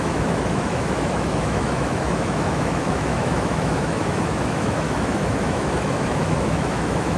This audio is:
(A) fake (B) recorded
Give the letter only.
A